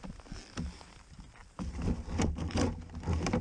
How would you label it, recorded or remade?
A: recorded